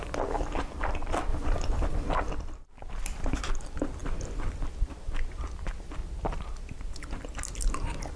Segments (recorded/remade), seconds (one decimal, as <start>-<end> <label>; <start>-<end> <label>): 0.0-1.3 remade; 1.3-3.5 recorded; 3.5-6.0 remade; 6.0-7.7 recorded; 7.7-8.2 remade